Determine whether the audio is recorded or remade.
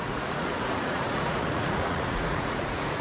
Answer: remade